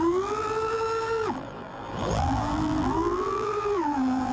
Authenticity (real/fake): fake